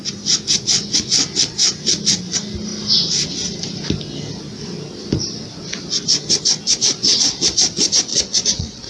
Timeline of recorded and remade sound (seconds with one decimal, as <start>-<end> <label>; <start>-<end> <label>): 0.0-8.1 recorded; 8.1-8.9 remade